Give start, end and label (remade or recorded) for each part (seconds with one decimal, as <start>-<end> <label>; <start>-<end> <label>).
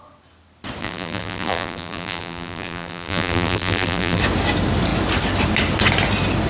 0.0-0.8 recorded; 0.8-4.2 remade; 4.2-6.5 recorded